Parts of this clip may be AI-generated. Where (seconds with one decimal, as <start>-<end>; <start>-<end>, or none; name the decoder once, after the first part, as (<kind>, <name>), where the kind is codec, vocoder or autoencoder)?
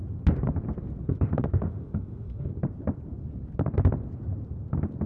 1.1-2.5 (autoencoder, DAC-VAE)